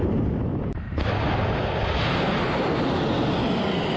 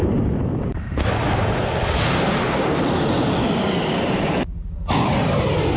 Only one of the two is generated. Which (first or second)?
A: second